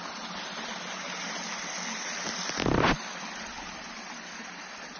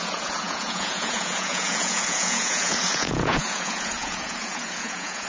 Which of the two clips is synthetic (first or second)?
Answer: second